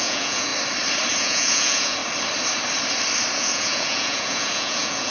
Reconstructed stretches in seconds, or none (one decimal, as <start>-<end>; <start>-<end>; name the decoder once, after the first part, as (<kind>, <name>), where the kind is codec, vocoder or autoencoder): 0.0-0.5 (vocoder, Vocos); 1.1-2.0; 3.3-5.1